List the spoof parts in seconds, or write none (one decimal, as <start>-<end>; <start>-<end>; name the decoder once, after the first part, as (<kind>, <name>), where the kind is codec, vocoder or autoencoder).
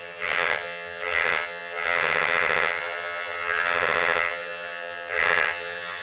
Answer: 0.0-6.0 (vocoder, HiFi-GAN)